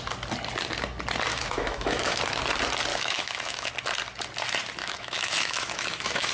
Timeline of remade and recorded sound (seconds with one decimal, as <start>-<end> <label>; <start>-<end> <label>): 0.0-1.3 recorded; 1.3-2.2 remade; 2.2-2.9 recorded; 2.9-3.7 remade; 3.7-4.8 recorded; 4.8-6.3 remade